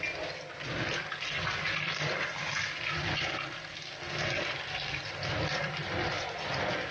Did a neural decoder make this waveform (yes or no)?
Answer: no